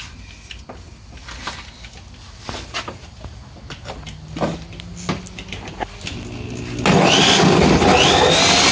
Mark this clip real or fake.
real